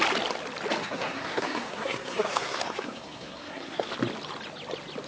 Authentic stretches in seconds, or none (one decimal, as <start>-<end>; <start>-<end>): 0.0-0.8; 3.9-5.1